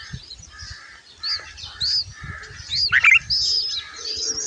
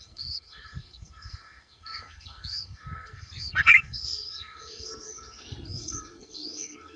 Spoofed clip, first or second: second